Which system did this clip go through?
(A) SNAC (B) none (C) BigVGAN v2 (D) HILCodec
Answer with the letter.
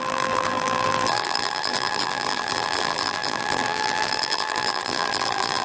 C